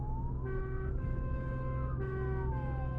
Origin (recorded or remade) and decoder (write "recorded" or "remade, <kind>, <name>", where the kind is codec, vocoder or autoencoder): remade, autoencoder, DAC-VAE